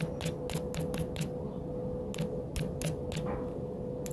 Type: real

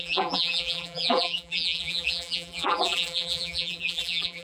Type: fake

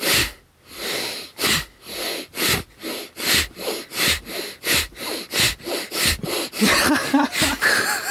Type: real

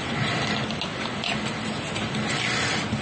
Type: real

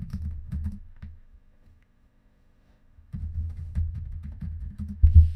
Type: fake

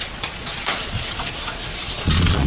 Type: fake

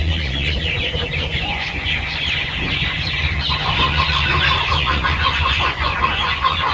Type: fake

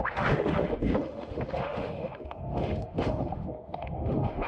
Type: fake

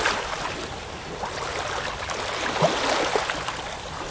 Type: real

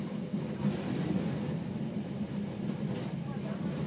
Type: real